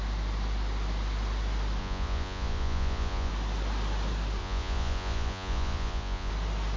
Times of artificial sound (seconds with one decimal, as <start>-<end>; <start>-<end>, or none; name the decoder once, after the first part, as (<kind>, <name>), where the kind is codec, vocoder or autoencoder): 1.8-3.3 (vocoder, Vocos); 4.4-6.3